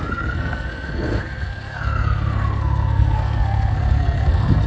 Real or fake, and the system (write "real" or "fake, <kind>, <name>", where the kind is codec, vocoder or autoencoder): fake, codec, SNAC